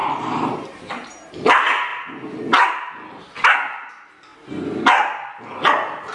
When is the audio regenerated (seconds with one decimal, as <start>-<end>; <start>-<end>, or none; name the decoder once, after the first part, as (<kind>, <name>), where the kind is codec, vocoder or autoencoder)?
0.0-1.3 (vocoder, BigVGAN v2)